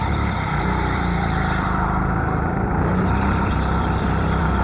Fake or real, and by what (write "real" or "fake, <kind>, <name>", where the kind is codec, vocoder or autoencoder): fake, vocoder, BigVGAN v2